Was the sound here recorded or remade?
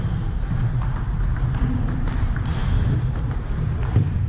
remade